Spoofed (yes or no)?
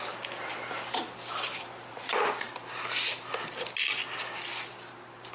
no